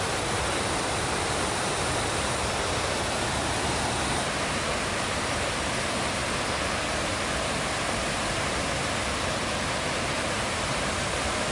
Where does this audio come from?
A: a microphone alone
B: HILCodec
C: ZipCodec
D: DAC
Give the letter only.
A